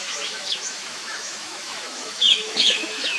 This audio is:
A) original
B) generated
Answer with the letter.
B